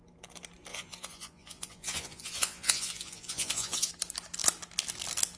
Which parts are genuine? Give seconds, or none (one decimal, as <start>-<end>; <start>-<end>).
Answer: 0.0-0.7; 3.9-5.4